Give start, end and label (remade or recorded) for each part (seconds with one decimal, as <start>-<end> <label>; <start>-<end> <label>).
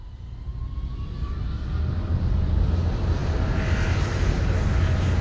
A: 0.0-0.5 recorded; 0.5-1.4 remade; 1.4-5.2 recorded